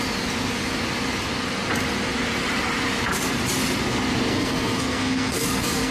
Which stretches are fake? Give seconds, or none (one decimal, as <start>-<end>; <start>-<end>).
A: 4.3-5.9